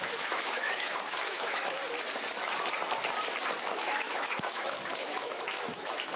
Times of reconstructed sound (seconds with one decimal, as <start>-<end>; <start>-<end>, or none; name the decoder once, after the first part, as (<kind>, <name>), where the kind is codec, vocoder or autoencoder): 0.0-1.8 (autoencoder, DAC-VAE); 3.6-6.2